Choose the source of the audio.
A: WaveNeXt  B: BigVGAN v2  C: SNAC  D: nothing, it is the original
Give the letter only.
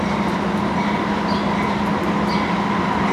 D